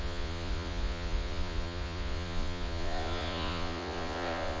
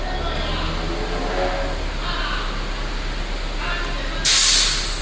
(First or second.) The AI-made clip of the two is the first